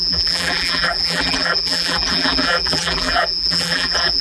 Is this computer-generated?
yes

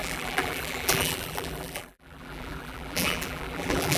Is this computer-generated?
yes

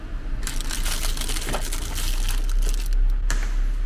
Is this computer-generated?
no